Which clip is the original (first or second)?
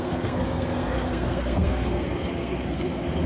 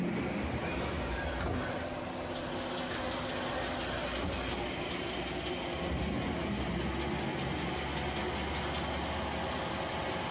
second